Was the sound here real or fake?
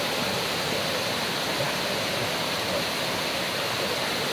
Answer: fake